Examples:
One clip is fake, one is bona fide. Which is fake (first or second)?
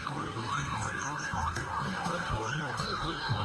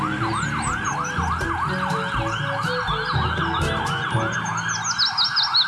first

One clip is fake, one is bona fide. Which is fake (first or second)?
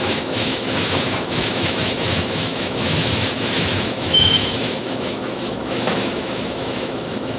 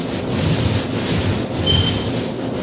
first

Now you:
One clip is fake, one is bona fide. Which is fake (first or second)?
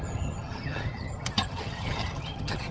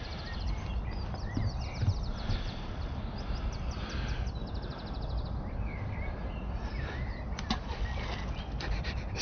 first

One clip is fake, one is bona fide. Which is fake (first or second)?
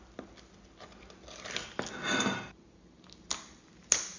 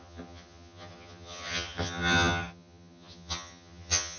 second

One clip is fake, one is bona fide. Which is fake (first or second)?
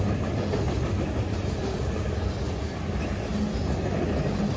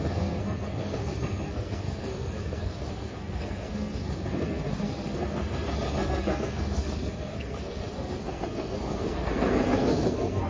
second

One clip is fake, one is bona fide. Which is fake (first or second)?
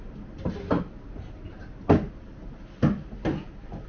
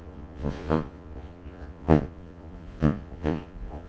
second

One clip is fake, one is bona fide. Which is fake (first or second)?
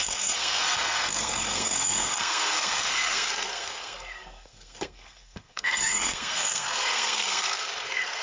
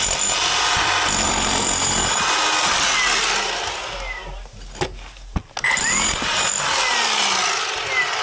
first